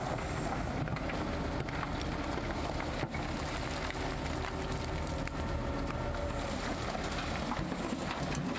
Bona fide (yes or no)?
yes